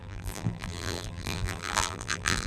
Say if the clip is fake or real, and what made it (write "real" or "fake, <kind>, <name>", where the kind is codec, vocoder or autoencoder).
fake, vocoder, BigVGAN v2